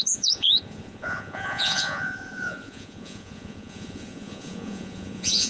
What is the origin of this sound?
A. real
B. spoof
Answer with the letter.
B